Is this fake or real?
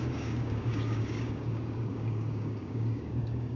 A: fake